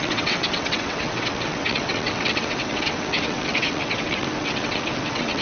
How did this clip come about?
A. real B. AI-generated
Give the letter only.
B